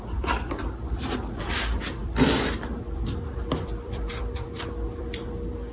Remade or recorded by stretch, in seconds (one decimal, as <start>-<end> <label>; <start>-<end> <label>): 0.0-5.7 remade